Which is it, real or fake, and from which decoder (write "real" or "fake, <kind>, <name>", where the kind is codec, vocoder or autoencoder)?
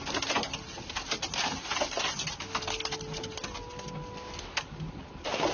real